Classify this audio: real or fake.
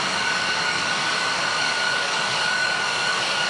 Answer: fake